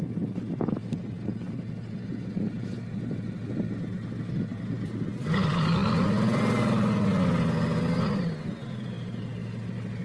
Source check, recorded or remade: recorded